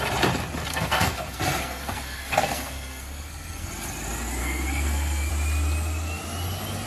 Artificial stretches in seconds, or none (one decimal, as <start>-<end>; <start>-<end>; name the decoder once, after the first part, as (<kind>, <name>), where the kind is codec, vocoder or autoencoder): 0.7-3.7 (codec, SNAC); 4.4-5.3